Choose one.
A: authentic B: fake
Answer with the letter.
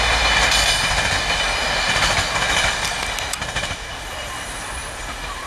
A